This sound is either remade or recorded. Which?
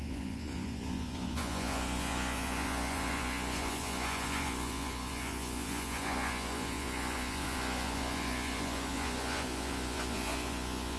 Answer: remade